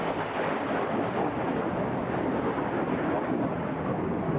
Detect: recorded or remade recorded